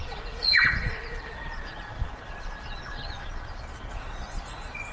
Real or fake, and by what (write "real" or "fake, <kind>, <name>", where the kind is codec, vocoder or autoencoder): fake, vocoder, Vocos